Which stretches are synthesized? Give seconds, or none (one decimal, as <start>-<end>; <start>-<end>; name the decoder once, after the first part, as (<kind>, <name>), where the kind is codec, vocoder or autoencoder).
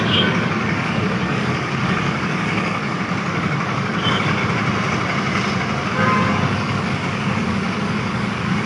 0.0-4.4 (codec, DAC); 5.9-8.7